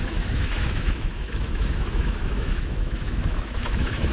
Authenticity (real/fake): fake